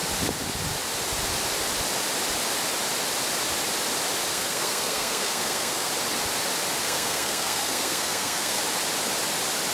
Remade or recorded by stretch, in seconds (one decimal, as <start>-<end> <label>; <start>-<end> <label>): 0.0-4.3 recorded; 4.3-5.9 remade; 5.9-6.8 recorded; 6.8-8.6 remade; 8.6-9.7 recorded